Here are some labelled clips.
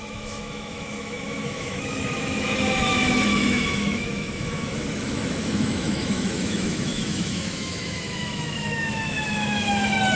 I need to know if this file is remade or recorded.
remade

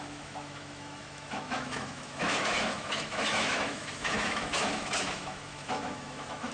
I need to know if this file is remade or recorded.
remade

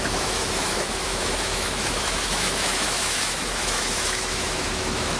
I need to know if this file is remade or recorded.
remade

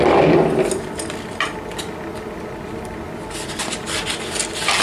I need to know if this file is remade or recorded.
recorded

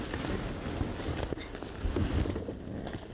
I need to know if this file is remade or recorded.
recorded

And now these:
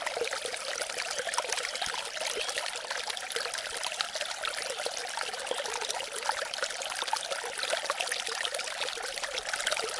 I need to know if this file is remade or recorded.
recorded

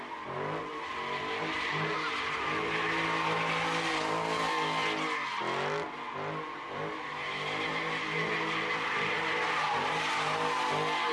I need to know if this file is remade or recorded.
recorded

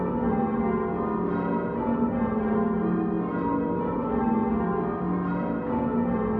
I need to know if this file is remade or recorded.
recorded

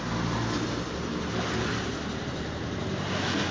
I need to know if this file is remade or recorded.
recorded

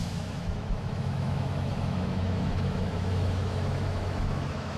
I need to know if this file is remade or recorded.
remade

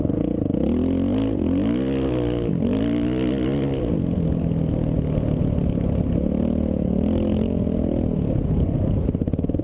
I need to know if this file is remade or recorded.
recorded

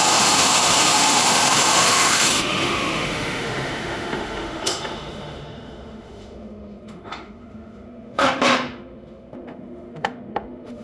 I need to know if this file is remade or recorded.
remade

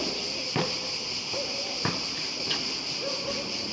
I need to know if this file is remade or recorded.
recorded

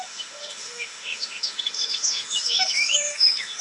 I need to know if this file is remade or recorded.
remade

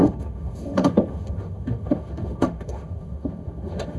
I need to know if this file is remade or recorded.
remade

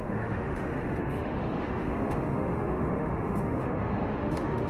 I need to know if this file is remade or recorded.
remade